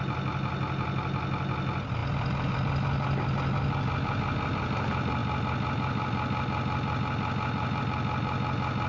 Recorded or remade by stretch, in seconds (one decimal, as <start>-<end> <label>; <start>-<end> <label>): 0.0-8.9 recorded